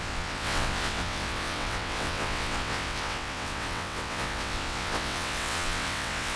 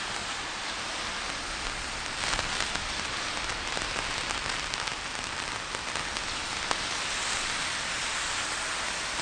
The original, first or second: second